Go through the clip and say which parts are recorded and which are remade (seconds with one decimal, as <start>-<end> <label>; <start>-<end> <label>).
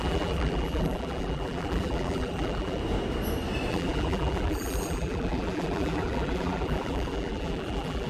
0.0-2.8 remade; 2.8-3.7 recorded; 3.7-8.1 remade